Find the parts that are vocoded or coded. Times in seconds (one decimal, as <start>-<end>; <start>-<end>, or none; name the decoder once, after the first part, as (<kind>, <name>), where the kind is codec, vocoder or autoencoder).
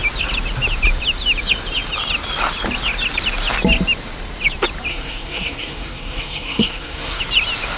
4.9-7.2 (codec, SNAC)